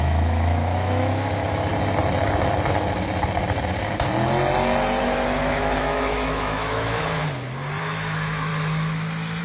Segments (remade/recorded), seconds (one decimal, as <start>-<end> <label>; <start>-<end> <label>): 0.0-1.7 remade; 1.7-5.0 recorded; 5.0-7.2 remade; 7.2-7.8 recorded; 7.8-8.5 remade; 8.5-9.4 recorded